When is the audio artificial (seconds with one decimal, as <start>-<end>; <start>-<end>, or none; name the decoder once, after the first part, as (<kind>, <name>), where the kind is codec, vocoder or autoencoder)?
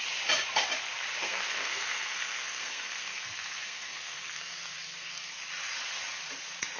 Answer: 1.2-5.3 (codec, SNAC)